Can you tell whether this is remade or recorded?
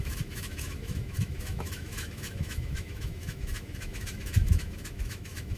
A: remade